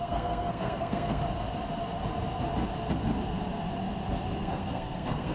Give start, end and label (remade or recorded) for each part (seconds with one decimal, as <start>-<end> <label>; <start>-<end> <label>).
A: 0.0-1.2 remade; 1.2-4.4 recorded; 4.4-5.3 remade